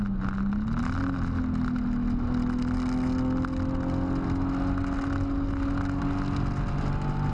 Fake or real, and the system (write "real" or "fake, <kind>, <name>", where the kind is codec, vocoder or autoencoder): real